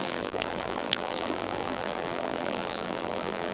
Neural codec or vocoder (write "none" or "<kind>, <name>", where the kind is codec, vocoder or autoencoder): vocoder, BigVGAN v2